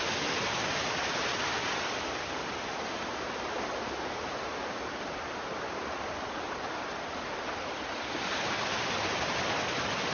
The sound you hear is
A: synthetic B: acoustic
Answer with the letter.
B